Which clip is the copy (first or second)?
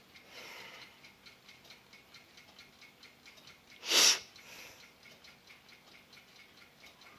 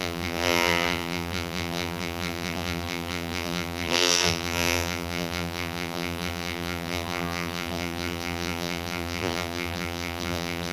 second